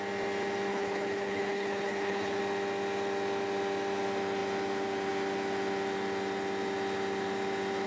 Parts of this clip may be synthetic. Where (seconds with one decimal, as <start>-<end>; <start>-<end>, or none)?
0.7-2.4